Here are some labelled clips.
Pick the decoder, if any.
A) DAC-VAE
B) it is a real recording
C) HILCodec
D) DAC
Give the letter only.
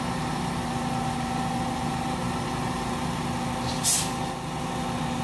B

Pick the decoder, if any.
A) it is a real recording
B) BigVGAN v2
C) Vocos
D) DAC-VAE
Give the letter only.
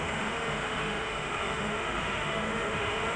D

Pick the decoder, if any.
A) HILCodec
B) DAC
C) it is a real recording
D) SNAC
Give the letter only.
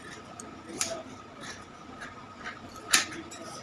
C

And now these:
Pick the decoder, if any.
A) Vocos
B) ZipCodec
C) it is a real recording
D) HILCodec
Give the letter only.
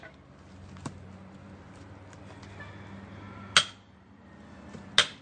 C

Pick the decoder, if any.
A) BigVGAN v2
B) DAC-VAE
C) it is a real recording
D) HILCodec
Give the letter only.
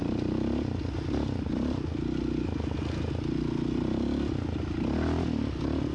C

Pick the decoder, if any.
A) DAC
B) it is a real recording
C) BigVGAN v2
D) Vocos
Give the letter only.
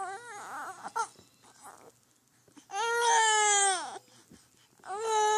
B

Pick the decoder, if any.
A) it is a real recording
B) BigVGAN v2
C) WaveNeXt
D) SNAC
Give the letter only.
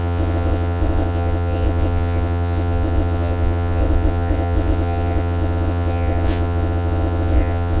C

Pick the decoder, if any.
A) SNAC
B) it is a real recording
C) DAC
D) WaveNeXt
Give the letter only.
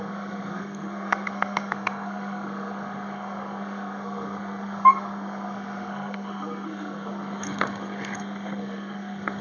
A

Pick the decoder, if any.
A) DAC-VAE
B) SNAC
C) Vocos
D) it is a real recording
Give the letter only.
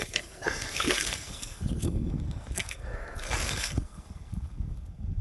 B